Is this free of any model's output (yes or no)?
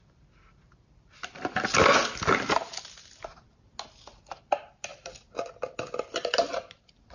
yes